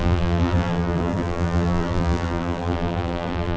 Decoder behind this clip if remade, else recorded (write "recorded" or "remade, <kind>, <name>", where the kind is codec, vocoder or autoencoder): remade, vocoder, BigVGAN v2